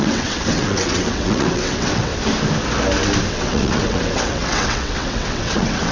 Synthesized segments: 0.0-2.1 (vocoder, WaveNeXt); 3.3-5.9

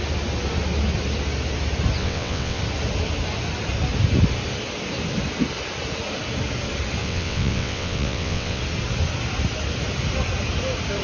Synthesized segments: 2.0-2.6 (vocoder, WaveNeXt); 7.0-8.6